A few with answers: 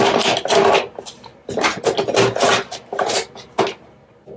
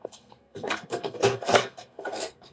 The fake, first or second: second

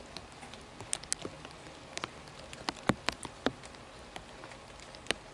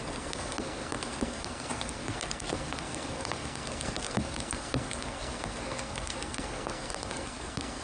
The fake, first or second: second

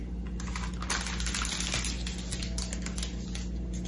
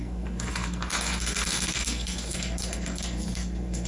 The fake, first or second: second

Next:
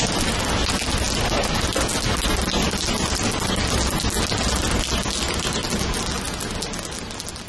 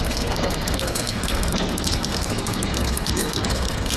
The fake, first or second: second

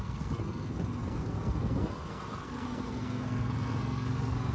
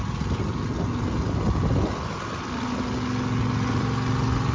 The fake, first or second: first